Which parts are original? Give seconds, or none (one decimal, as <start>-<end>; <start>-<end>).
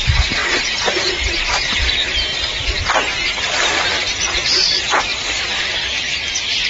0.4-1.8; 2.3-3.3